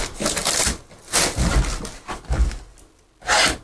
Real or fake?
real